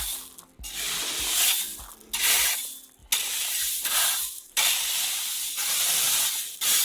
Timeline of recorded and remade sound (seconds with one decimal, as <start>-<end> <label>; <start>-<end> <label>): 0.0-3.0 recorded; 3.0-5.5 remade; 5.5-6.8 recorded